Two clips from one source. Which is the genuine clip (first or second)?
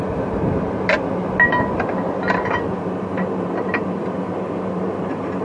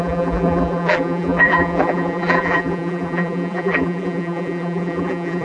first